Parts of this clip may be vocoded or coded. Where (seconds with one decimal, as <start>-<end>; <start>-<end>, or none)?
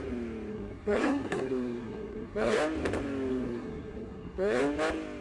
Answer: 0.5-2.6; 3.3-4.6